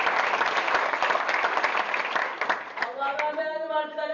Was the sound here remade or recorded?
recorded